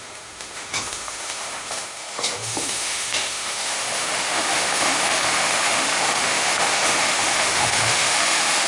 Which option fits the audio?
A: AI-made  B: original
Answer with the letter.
A